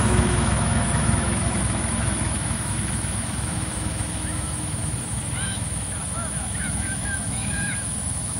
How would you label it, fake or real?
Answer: fake